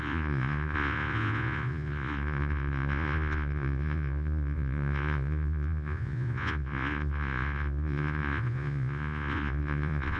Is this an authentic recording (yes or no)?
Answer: no